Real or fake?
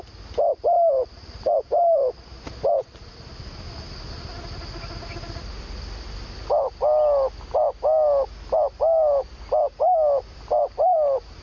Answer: real